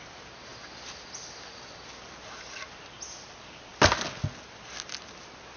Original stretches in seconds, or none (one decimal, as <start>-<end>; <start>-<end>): 0.0-5.6